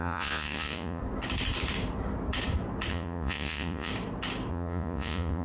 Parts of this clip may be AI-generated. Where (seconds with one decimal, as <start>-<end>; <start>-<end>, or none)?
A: 0.0-1.0; 2.9-3.9; 4.5-5.4